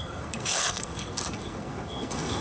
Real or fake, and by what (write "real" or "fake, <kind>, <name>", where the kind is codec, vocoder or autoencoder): fake, codec, SNAC